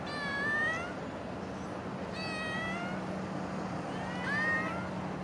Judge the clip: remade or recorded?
recorded